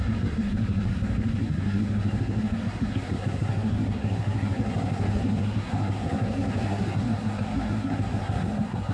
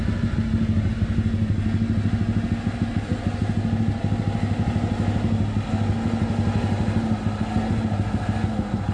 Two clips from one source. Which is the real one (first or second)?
second